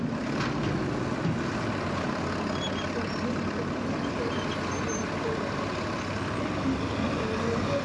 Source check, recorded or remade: recorded